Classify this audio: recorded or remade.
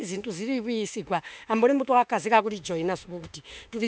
remade